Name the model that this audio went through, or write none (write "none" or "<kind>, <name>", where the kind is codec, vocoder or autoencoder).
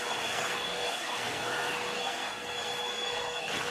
codec, SNAC